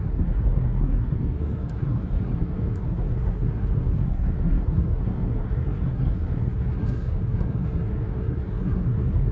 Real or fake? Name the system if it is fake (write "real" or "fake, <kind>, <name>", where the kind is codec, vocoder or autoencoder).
fake, codec, SNAC